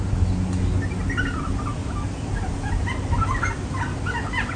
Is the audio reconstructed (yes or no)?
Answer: no